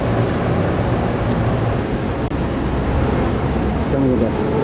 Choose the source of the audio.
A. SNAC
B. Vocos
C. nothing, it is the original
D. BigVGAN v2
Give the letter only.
C